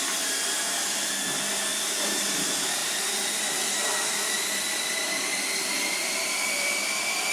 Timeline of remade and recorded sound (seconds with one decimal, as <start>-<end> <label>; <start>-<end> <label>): 0.0-1.7 recorded; 1.7-2.4 remade; 2.4-2.8 recorded; 2.8-7.3 remade

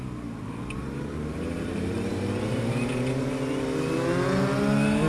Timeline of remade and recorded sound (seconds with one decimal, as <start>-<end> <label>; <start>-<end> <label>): 0.0-0.8 recorded; 0.8-3.3 remade; 3.3-5.1 recorded

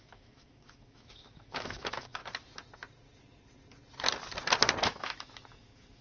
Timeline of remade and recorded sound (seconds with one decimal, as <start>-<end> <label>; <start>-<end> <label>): 0.0-2.2 remade; 2.2-4.8 recorded; 4.8-6.0 remade